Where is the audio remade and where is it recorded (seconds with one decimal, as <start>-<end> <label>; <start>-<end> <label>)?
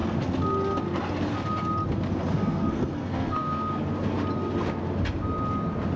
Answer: 0.0-2.3 recorded; 2.3-3.7 remade; 3.7-6.0 recorded